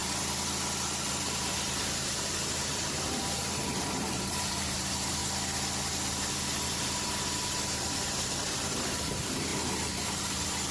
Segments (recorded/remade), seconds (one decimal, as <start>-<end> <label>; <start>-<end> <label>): 0.0-5.2 remade; 5.2-5.9 recorded; 5.9-10.7 remade